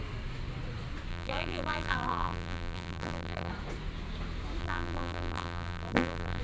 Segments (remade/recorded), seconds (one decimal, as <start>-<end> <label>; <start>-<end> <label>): 0.0-1.1 recorded; 1.1-3.5 remade; 3.5-4.6 recorded; 4.6-6.4 remade